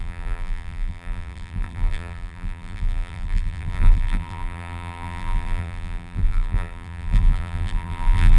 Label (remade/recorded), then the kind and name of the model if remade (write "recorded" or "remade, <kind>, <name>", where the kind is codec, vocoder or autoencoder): remade, vocoder, BigVGAN v2